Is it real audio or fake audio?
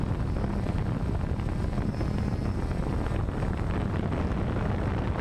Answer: real